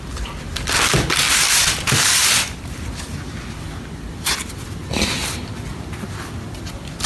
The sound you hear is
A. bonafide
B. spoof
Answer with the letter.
B